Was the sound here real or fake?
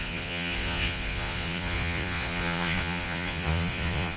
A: fake